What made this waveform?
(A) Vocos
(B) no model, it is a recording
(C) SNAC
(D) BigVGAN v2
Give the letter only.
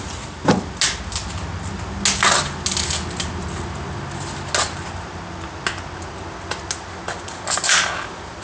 B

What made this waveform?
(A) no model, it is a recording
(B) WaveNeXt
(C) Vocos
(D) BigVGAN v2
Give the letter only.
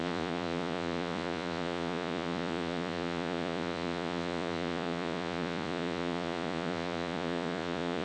C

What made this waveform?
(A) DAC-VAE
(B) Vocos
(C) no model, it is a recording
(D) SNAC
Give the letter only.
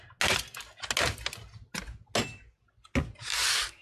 C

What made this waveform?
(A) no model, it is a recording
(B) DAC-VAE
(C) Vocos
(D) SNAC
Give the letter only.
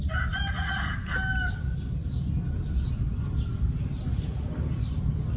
A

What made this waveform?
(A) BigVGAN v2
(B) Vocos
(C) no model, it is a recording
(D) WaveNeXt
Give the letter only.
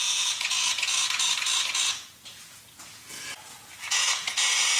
B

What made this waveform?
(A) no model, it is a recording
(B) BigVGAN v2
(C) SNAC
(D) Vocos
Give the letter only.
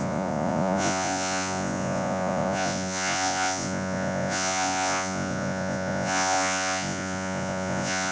D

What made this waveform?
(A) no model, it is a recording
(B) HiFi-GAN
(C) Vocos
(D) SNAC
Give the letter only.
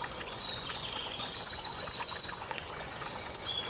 C